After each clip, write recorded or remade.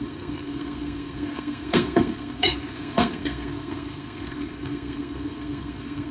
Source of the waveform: remade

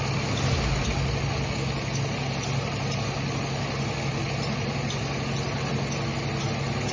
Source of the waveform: recorded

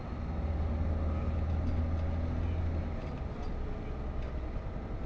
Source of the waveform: recorded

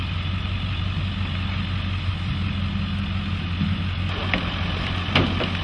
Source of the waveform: recorded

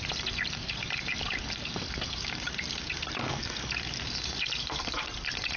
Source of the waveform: recorded